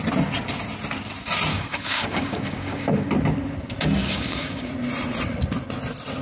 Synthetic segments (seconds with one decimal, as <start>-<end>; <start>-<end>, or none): 1.5-3.1; 4.0-4.7